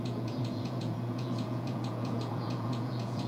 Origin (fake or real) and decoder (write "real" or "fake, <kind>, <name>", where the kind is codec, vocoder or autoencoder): fake, vocoder, Vocos